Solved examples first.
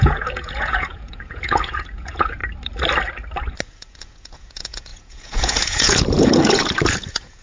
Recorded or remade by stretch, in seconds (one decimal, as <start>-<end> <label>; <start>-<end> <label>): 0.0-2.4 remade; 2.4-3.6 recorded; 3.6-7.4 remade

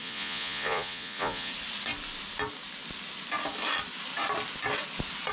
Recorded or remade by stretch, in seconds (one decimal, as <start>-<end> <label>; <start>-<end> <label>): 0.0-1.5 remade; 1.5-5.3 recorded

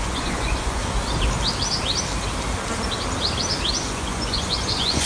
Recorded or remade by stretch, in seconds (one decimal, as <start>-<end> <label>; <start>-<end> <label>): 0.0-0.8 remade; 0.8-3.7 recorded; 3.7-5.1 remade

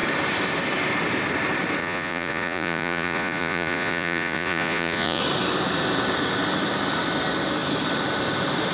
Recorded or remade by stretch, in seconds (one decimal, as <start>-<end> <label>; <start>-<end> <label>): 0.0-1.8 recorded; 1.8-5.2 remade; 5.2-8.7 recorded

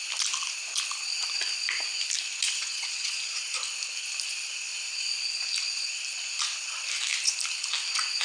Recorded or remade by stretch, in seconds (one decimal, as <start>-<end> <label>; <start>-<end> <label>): 0.0-2.6 recorded; 2.6-3.2 remade; 3.2-8.2 recorded